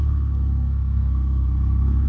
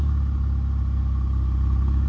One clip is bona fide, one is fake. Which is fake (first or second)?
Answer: first